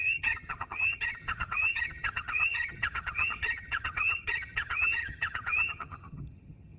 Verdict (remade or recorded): remade